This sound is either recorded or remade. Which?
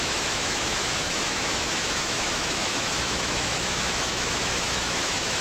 remade